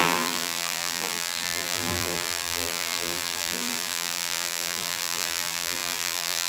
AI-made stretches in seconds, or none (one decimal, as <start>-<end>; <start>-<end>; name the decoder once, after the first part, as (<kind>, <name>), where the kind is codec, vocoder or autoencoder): 0.0-6.5 (vocoder, BigVGAN v2)